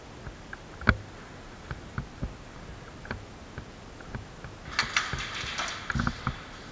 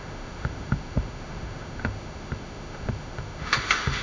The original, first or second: first